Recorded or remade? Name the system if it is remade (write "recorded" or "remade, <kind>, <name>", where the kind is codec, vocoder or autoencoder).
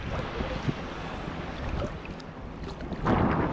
recorded